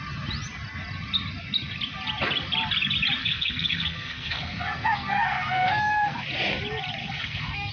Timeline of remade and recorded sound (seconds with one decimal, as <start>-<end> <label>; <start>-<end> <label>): 0.0-3.2 recorded; 3.2-6.2 remade; 6.2-7.0 recorded; 7.0-7.7 remade